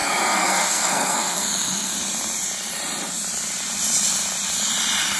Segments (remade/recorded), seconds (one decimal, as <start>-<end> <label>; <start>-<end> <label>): 0.0-1.9 remade; 1.9-5.2 recorded